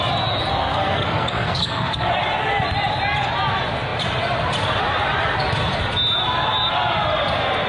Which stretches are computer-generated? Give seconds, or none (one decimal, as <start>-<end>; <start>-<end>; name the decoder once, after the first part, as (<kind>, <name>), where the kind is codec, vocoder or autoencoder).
0.5-2.1 (codec, SNAC)